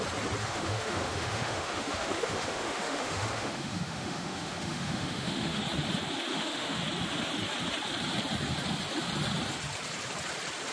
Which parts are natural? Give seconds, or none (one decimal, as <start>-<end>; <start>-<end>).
0.0-0.4; 5.6-6.3; 6.8-10.7